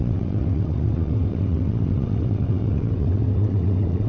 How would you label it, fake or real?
fake